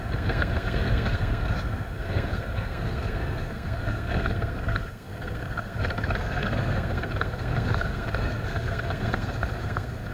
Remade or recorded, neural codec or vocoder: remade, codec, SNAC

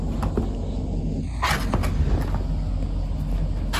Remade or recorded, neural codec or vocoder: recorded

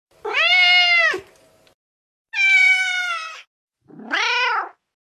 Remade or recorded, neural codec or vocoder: recorded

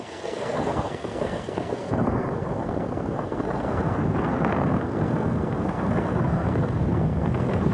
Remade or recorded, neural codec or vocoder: remade, codec, SNAC